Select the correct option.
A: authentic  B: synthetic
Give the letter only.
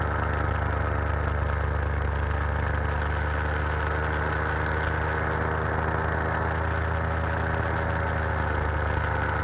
A